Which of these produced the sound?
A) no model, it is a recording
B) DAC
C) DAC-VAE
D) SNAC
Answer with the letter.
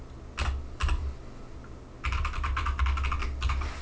A